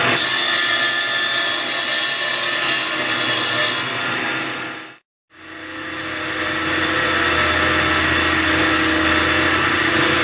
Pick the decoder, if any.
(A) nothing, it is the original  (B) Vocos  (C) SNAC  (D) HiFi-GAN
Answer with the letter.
A